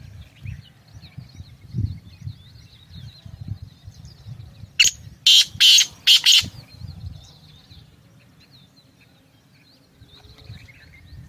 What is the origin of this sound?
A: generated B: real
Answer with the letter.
B